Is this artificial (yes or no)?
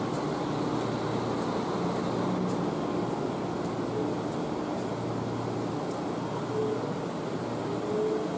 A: no